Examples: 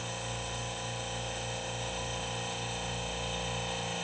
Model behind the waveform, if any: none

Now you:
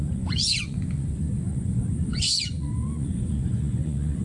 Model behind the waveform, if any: vocoder, Vocos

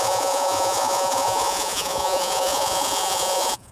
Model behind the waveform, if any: vocoder, Vocos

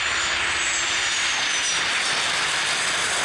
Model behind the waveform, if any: none